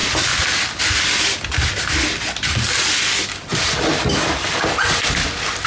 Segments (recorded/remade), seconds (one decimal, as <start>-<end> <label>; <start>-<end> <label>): 0.0-5.7 recorded